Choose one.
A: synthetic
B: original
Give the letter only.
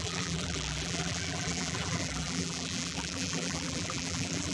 A